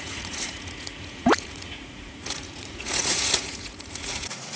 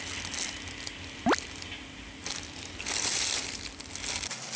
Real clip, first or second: second